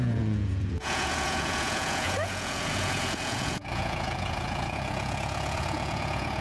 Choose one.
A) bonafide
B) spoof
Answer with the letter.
B